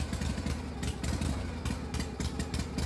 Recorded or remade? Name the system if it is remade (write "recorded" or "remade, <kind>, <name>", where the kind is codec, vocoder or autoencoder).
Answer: recorded